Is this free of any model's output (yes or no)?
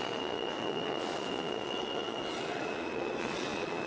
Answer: no